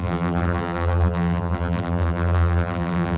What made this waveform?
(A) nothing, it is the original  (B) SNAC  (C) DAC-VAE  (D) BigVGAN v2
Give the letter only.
D